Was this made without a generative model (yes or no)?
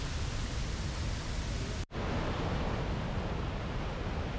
yes